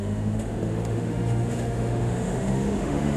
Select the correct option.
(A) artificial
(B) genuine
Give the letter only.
A